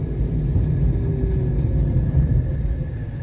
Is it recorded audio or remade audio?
recorded